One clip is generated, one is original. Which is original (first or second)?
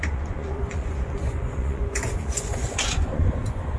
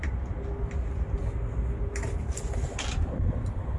second